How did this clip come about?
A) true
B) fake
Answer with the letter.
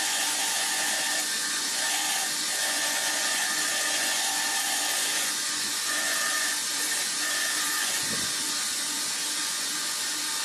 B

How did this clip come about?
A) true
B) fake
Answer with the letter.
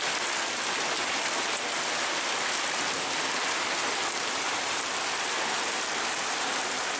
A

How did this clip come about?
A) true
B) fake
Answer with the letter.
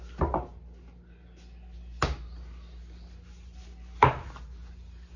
A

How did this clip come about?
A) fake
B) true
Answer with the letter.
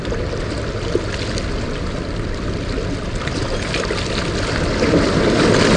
B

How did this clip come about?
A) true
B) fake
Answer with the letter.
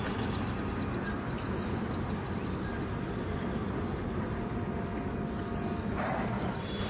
A